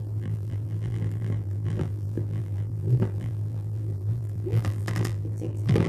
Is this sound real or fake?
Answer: fake